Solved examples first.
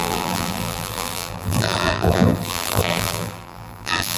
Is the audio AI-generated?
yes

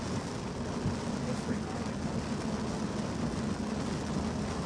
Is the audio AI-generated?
no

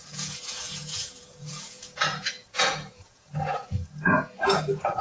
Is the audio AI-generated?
yes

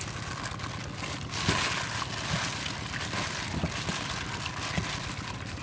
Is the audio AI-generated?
no